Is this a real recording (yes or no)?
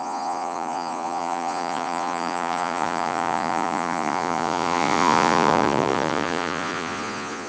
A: no